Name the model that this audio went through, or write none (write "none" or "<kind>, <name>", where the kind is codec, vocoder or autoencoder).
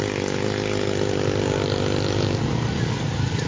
none